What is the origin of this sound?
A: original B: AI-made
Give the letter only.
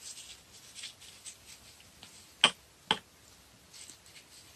A